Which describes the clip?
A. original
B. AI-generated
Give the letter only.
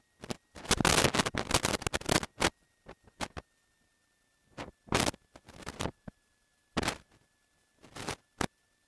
A